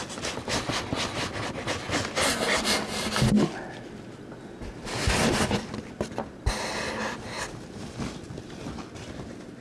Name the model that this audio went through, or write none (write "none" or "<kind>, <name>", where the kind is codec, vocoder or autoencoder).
none